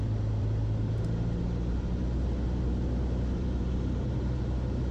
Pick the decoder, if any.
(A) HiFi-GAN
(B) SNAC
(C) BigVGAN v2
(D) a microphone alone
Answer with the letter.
C